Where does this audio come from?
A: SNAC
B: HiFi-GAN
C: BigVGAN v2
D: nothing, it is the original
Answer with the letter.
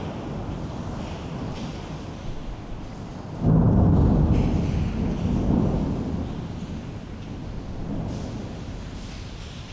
D